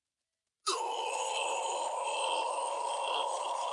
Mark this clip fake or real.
real